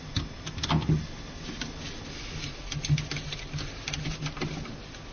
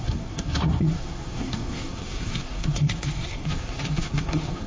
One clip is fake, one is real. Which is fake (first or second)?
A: second